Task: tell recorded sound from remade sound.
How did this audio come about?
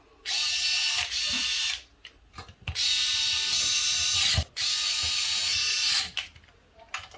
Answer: recorded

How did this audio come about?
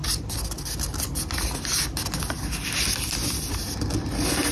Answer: recorded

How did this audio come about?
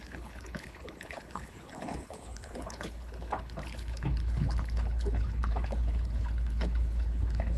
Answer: remade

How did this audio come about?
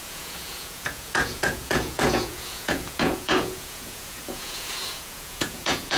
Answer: remade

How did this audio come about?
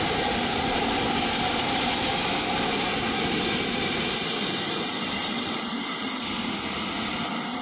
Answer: remade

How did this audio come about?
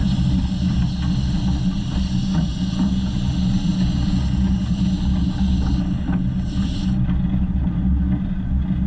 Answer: recorded